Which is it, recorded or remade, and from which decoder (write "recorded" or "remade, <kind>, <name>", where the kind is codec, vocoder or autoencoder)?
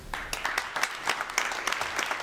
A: recorded